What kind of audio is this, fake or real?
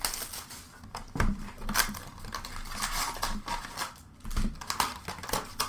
real